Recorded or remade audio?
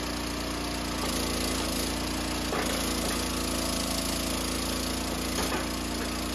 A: recorded